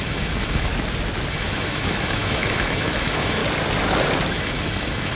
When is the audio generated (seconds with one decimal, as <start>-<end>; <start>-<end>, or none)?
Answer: 0.0-0.7; 1.3-3.4; 4.3-5.2

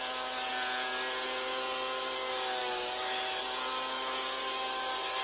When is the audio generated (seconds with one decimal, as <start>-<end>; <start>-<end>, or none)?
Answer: 2.6-3.4

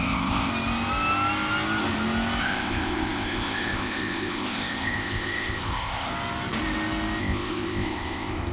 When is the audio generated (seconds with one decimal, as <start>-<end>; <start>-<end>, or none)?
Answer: 0.0-0.5; 2.4-6.1; 7.2-8.5

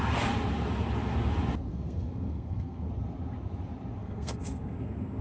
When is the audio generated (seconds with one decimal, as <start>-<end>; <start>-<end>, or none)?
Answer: 1.7-2.9; 4.0-5.2

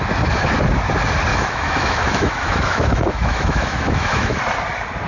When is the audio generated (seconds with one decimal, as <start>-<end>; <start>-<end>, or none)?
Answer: 1.3-4.4

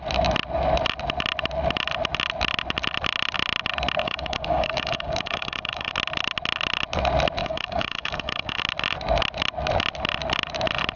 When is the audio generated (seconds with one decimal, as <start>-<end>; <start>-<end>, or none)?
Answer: 4.0-5.9; 7.4-8.6

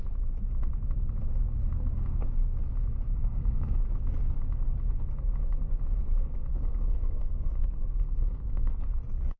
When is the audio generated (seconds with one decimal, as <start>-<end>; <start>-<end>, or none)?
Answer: 3.1-3.8; 6.5-8.7